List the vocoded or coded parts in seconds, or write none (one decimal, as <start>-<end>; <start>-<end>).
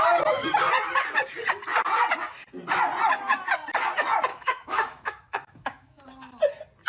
4.3-6.0